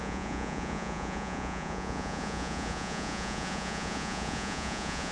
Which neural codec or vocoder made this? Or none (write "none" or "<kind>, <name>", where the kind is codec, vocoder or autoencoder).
vocoder, Vocos